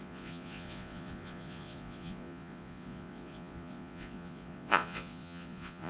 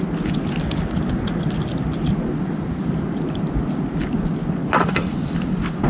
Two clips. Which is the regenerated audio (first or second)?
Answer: first